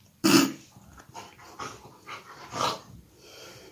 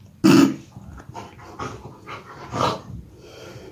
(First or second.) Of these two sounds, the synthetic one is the first